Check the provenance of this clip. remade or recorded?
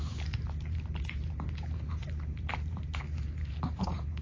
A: remade